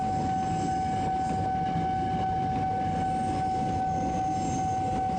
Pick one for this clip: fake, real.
real